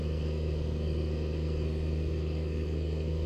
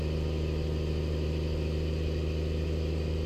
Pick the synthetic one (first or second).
first